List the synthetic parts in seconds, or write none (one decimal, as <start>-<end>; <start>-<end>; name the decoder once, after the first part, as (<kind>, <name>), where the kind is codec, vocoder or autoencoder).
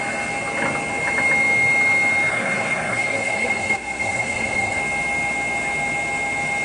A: 2.3-4.8 (codec, SNAC)